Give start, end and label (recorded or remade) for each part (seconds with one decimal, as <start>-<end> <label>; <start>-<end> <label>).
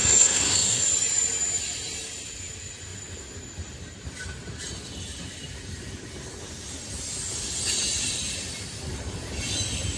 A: 0.0-0.9 remade; 0.9-10.0 recorded